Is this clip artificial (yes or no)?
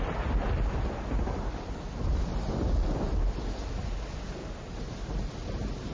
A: no